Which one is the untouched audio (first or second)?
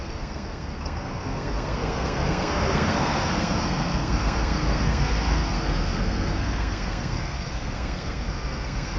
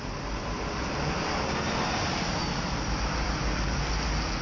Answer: second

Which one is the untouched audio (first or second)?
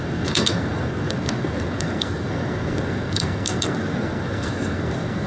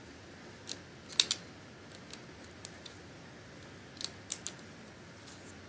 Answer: second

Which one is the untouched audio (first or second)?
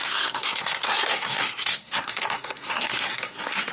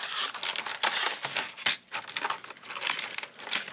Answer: second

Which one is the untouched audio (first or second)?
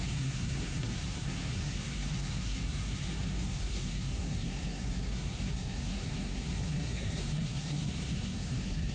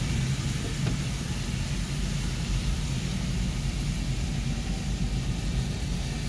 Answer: second